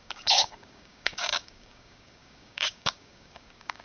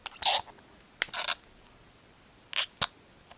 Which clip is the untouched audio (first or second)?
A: second